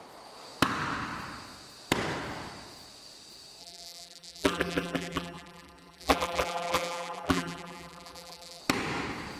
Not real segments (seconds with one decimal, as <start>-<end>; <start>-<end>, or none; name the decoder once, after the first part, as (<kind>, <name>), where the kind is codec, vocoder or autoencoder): 3.6-8.6 (vocoder, BigVGAN v2)